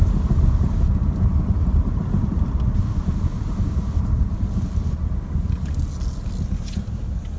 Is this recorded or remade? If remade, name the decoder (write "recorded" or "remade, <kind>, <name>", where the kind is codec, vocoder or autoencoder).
recorded